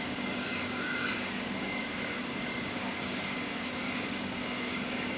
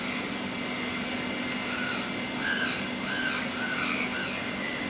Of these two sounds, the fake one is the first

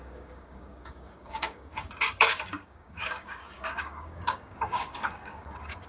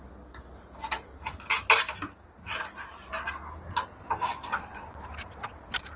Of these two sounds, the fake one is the first